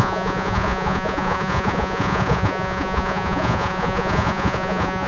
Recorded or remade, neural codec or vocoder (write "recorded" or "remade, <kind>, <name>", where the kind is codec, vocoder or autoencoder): remade, vocoder, Vocos